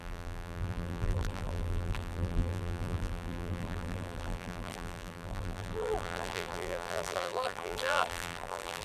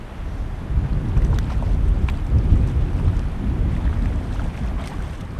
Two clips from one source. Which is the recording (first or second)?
second